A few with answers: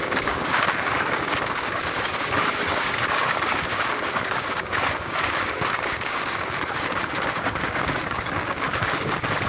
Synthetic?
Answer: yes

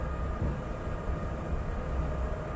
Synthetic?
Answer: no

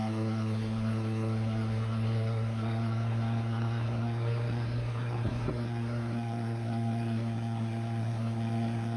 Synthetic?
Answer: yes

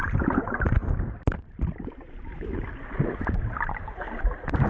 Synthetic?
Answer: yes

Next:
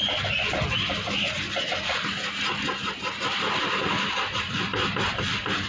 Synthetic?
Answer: no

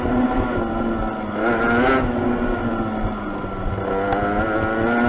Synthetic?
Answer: no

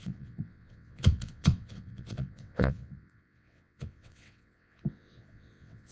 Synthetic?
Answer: yes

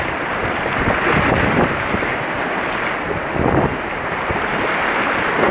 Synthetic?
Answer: no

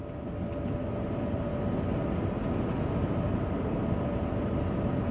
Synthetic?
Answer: no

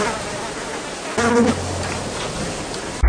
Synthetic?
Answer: no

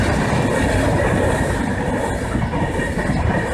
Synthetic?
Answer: no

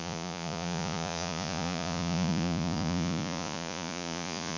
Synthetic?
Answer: yes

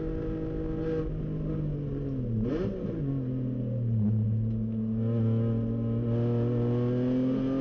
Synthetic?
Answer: no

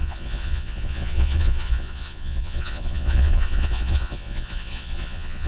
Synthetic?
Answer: yes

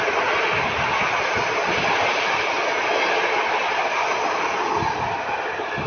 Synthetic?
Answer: no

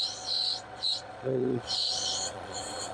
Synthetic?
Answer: yes